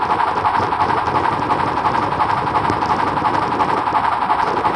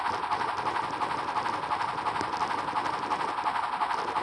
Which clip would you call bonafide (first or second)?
second